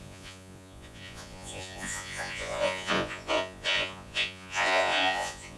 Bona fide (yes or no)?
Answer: no